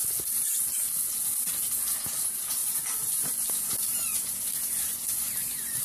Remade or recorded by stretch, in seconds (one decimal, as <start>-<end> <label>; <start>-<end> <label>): 0.0-5.8 recorded